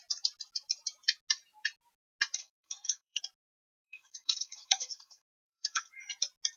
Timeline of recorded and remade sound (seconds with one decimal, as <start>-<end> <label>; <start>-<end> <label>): 0.0-2.4 recorded; 2.4-3.2 remade; 3.2-3.8 recorded; 3.8-5.9 remade; 5.9-6.6 recorded